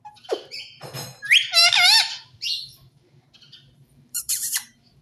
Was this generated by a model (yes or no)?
yes